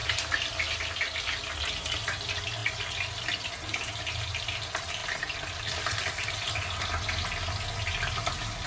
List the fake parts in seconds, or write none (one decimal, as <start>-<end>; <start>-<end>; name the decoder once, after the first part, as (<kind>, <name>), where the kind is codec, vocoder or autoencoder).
none